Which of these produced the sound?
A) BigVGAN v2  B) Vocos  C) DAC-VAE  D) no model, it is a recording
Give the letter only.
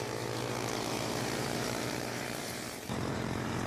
A